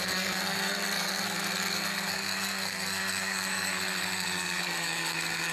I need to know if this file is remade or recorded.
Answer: remade